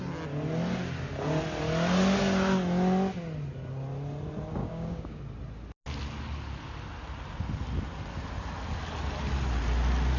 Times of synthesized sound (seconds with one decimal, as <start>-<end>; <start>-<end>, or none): 4.6-5.2